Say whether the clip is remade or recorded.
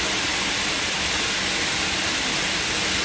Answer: recorded